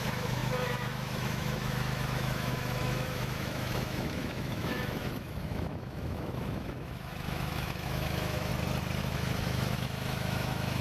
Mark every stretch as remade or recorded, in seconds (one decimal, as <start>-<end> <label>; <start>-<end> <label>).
0.0-8.5 remade; 8.5-9.0 recorded; 9.0-10.8 remade